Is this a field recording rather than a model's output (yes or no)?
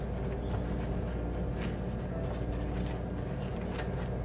yes